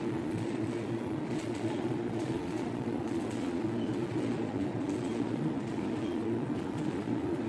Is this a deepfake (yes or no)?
yes